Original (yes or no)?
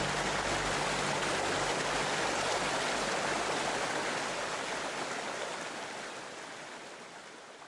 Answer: yes